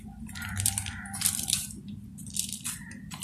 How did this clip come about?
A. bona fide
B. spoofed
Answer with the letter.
B